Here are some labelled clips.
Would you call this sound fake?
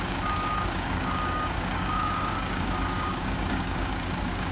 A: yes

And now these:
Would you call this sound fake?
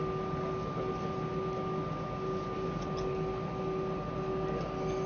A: no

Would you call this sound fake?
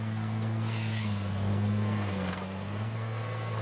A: yes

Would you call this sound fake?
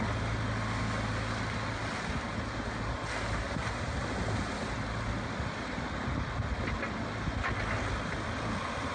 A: no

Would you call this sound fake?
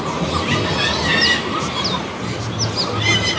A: no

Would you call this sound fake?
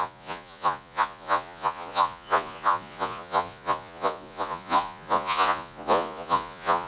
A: yes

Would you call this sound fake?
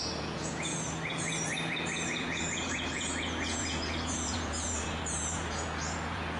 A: yes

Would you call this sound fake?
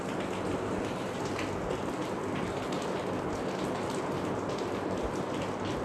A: no